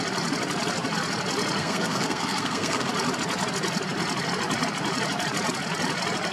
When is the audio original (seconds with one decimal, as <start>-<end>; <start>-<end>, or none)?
0.0-1.6; 2.9-6.3